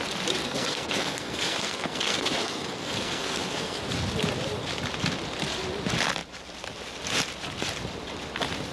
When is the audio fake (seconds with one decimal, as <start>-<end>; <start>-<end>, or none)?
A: 0.4-3.8